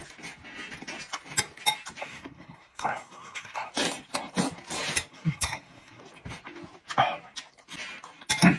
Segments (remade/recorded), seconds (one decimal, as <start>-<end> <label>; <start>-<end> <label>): 0.0-2.0 recorded; 2.0-3.7 remade; 3.7-5.1 recorded; 5.1-6.0 remade; 6.0-8.6 recorded